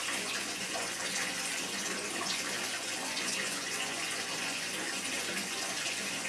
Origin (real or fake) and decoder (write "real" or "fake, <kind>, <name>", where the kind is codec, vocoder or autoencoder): fake, vocoder, Vocos